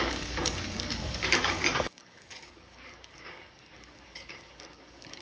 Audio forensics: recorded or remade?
remade